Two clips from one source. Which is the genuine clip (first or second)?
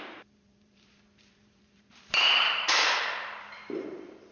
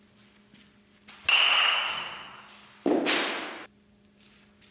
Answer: second